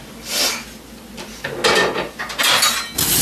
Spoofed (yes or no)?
no